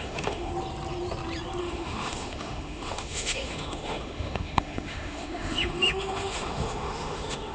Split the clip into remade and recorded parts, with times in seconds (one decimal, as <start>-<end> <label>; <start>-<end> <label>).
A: 0.0-0.5 remade; 0.5-1.6 recorded; 1.6-7.5 remade